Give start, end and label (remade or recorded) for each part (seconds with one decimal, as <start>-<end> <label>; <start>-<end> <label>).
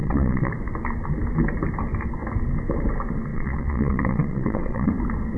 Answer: 0.0-0.5 remade; 0.5-3.3 recorded; 3.3-4.9 remade; 4.9-5.4 recorded